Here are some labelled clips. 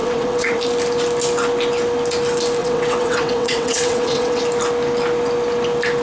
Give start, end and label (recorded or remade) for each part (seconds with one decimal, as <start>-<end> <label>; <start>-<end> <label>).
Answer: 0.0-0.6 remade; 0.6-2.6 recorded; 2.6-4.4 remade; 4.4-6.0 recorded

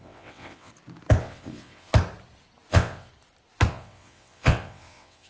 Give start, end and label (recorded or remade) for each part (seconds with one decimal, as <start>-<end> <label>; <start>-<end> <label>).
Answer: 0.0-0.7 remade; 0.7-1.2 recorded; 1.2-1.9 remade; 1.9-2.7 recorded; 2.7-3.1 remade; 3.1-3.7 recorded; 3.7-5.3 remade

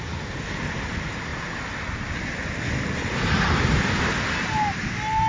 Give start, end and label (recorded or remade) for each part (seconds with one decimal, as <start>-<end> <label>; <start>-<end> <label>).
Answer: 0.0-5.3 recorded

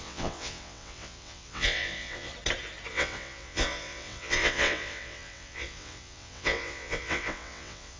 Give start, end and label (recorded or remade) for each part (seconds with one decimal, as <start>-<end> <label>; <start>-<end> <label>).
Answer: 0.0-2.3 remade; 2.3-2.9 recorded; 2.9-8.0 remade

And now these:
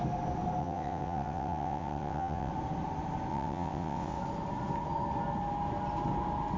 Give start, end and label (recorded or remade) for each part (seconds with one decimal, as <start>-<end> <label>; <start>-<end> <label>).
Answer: 0.0-0.6 recorded; 0.6-2.5 remade; 2.5-3.3 recorded; 3.3-4.2 remade; 4.2-6.6 recorded

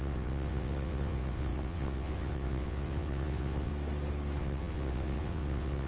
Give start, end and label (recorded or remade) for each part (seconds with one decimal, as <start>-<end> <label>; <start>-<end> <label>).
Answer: 0.0-3.7 remade; 3.7-4.4 recorded; 4.4-5.9 remade

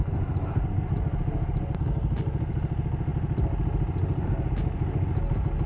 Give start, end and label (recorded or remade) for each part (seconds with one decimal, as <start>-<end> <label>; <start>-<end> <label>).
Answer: 0.0-5.7 recorded

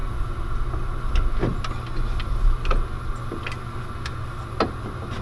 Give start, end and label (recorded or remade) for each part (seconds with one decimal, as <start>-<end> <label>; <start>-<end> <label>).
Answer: 0.0-5.2 recorded